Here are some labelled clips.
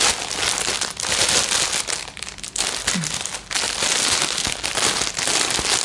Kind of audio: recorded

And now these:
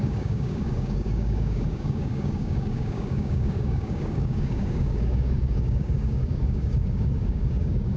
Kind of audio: remade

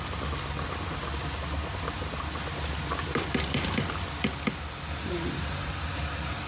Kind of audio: recorded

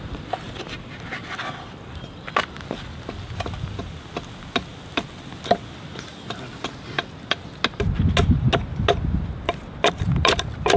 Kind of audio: recorded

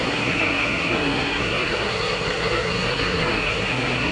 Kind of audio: remade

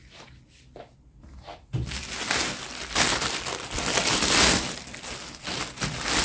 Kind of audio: recorded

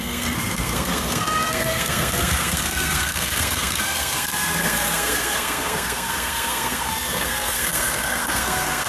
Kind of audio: remade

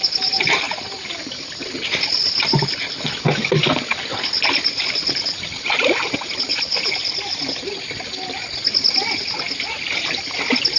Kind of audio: recorded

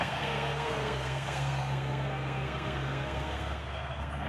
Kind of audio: remade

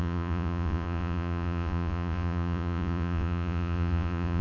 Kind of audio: remade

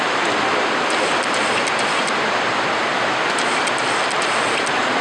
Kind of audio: remade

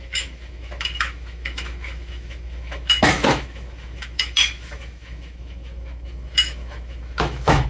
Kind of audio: remade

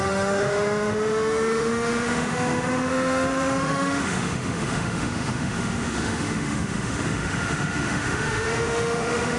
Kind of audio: remade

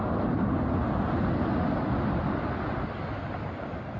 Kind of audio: recorded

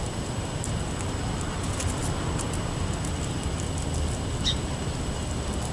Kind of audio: recorded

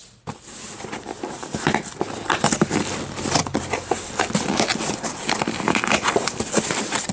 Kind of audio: remade